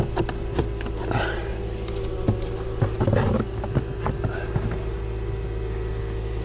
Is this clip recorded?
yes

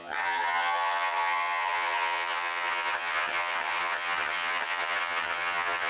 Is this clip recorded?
no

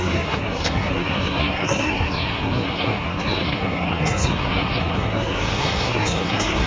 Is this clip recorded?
no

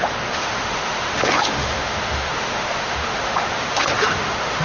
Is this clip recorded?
no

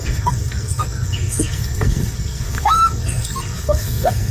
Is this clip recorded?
no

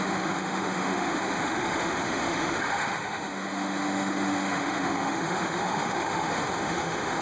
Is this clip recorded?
no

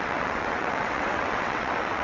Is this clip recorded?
no